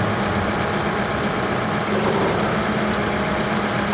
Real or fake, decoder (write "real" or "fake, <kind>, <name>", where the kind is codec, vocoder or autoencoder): real